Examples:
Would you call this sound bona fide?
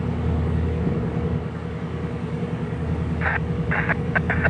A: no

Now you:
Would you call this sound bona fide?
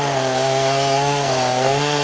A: no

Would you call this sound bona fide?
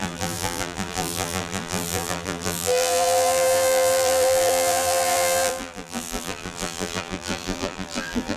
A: no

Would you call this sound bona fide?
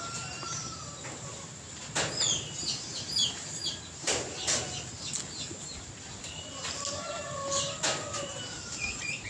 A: yes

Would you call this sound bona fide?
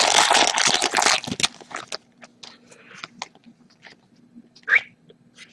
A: yes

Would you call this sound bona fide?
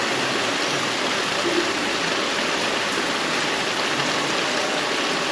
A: yes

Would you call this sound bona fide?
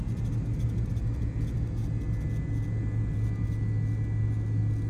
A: yes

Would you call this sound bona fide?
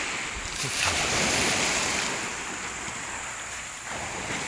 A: yes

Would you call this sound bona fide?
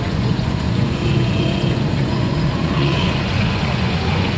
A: no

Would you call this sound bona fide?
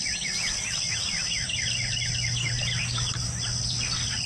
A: yes